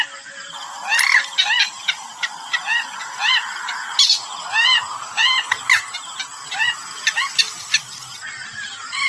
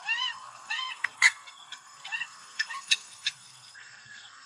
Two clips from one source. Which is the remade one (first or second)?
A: second